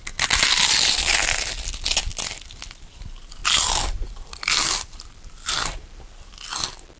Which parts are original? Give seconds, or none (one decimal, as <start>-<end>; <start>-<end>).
0.0-7.0